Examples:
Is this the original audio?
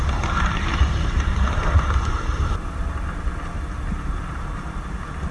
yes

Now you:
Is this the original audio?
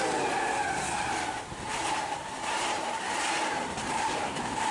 no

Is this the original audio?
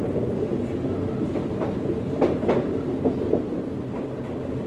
yes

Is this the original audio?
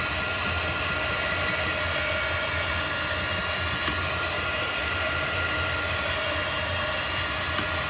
yes